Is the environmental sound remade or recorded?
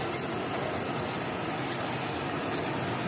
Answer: recorded